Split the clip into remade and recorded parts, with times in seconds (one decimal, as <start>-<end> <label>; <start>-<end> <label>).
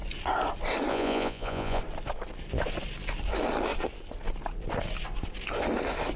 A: 0.0-0.9 recorded; 0.9-1.8 remade; 1.8-6.2 recorded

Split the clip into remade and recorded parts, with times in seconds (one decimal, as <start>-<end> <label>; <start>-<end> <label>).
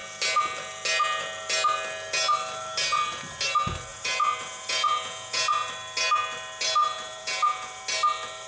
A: 0.0-3.9 recorded; 3.9-5.7 remade; 5.7-6.8 recorded; 6.8-7.8 remade; 7.8-8.5 recorded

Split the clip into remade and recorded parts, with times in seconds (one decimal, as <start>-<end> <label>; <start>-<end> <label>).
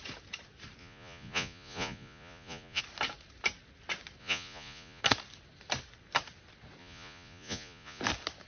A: 0.0-0.8 recorded; 0.8-2.8 remade; 2.8-4.2 recorded; 4.2-5.0 remade; 5.0-6.8 recorded; 6.8-8.0 remade; 8.0-8.5 recorded